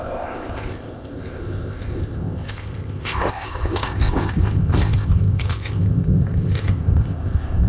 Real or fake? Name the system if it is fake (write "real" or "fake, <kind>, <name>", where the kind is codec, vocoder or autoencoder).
fake, codec, ZipCodec